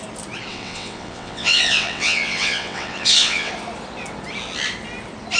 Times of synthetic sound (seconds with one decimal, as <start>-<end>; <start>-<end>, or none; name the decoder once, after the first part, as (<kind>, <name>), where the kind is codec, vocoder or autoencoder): 0.5-3.5 (vocoder, WaveNeXt)